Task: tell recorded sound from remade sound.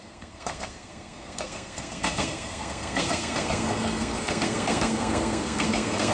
remade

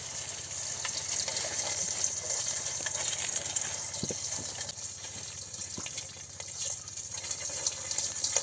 recorded